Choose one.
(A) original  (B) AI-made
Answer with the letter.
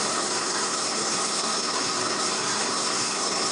B